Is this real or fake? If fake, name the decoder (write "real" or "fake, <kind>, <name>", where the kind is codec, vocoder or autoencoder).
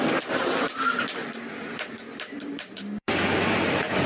fake, vocoder, BigVGAN v2